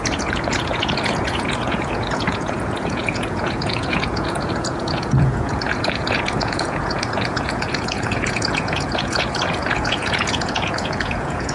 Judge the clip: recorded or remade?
remade